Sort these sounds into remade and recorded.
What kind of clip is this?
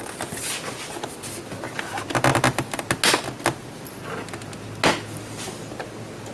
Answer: recorded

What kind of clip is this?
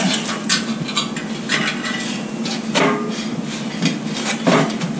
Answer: recorded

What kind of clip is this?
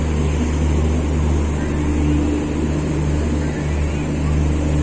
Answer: recorded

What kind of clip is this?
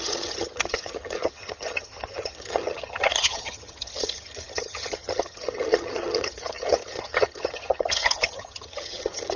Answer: remade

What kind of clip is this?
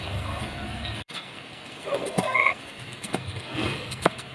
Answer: remade